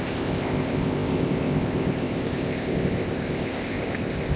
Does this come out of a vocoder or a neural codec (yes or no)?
yes